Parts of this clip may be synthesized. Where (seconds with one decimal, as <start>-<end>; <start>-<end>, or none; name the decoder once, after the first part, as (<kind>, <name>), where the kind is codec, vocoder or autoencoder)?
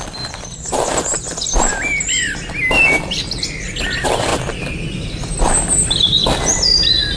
none